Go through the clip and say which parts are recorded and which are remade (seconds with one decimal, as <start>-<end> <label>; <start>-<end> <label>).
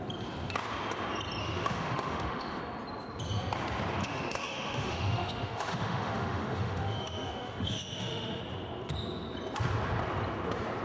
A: 0.0-1.4 recorded; 1.4-2.6 remade; 2.6-4.0 recorded; 4.0-8.4 remade; 8.4-10.8 recorded